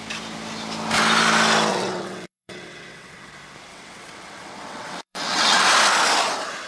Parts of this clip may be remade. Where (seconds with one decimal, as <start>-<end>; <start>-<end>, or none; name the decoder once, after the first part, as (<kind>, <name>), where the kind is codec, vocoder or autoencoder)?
1.7-3.3 (vocoder, WaveNeXt); 3.7-5.6